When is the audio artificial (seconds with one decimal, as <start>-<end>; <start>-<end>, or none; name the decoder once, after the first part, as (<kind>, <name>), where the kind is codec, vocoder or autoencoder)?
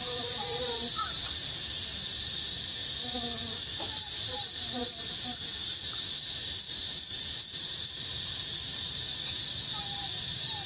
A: 0.0-2.8 (vocoder, BigVGAN v2); 3.7-4.8; 5.4-9.1; 10.0-10.7